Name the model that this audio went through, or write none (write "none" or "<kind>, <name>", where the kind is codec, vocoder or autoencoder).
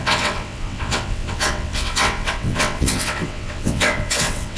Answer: vocoder, WaveNeXt